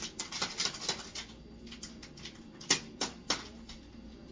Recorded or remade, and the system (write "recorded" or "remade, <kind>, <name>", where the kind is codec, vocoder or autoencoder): recorded